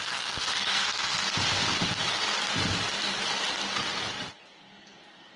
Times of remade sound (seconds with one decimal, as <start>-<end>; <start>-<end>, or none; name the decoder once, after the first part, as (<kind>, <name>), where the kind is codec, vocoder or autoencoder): 0.0-1.2 (codec, SNAC); 4.4-5.4